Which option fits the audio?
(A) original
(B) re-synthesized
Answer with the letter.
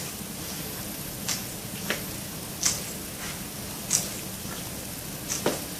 A